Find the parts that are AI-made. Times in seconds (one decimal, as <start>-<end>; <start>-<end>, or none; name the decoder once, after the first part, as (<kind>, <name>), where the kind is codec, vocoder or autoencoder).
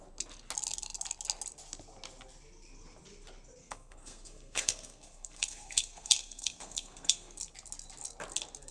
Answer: 3.6-7.4 (codec, SNAC)